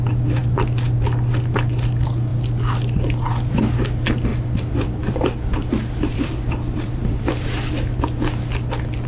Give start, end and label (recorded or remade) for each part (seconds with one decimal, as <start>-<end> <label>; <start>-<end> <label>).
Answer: 0.0-4.3 recorded; 4.3-7.7 remade; 7.7-9.1 recorded